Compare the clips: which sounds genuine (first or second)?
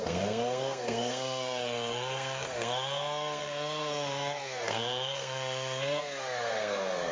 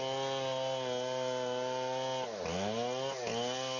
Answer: second